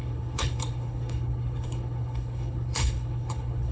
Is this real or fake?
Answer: fake